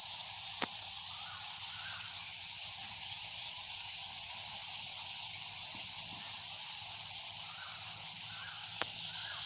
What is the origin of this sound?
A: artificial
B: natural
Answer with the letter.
B